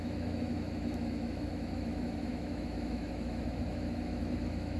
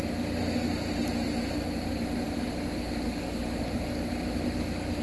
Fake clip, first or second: first